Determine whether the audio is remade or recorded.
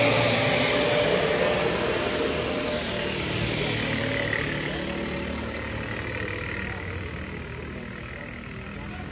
recorded